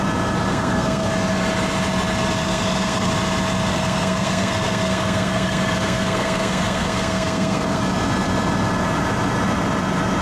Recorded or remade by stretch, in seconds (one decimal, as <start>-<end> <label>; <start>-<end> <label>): 0.0-0.5 recorded; 0.5-1.1 remade; 1.1-2.5 recorded; 2.5-3.1 remade; 3.1-3.7 recorded; 3.7-7.8 remade; 7.8-10.2 recorded